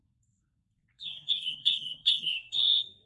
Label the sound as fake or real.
fake